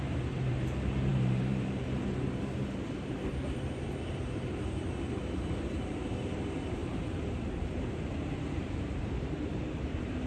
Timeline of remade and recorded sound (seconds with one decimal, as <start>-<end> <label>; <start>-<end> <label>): 0.0-10.3 remade